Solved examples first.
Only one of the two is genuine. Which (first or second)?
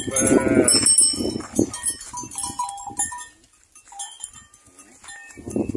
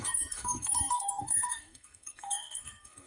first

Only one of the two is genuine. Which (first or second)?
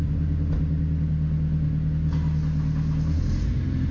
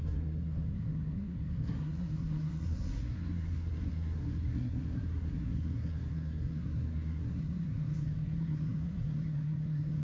first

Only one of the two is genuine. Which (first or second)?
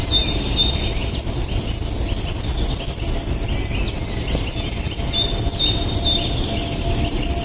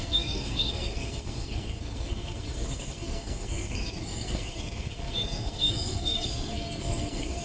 first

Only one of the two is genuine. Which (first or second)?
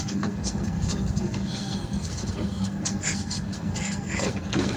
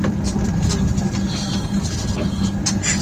second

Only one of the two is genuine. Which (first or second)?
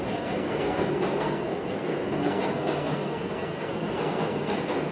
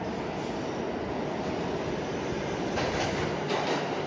second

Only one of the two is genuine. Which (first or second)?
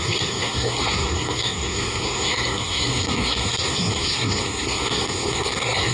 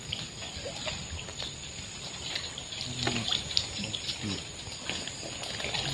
second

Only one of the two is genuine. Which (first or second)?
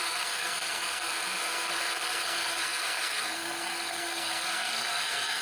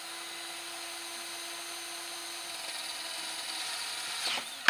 second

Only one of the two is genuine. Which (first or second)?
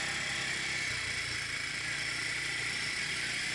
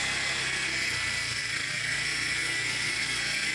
first